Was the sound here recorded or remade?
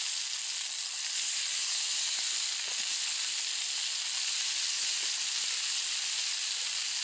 recorded